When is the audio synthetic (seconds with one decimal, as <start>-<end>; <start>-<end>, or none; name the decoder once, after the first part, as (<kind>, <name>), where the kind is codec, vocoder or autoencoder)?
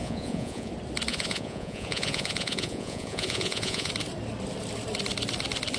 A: 0.0-0.7 (vocoder, Vocos); 1.1-3.9